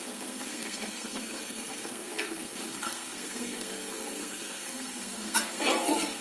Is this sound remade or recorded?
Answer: remade